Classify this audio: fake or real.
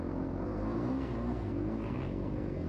fake